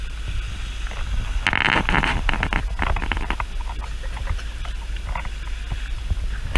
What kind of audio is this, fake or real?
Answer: real